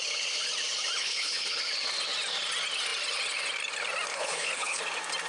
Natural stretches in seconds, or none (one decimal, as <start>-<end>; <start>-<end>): 0.0-1.0; 1.6-4.1; 4.8-5.3